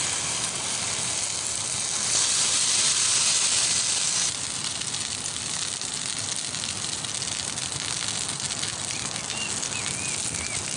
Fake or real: real